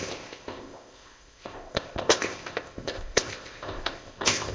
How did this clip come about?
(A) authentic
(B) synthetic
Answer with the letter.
B